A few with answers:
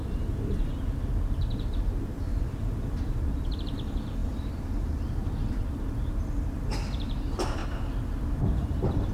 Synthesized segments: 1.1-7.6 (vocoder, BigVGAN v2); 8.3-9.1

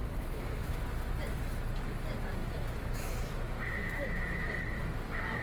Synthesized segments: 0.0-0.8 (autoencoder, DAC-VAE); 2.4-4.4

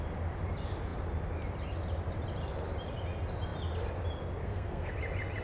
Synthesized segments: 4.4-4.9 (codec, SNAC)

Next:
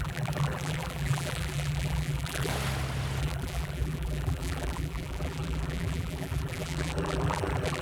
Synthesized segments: 0.0-2.5 (vocoder, BigVGAN v2); 3.2-7.8

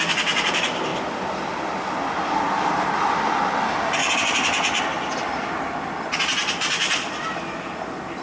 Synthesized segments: none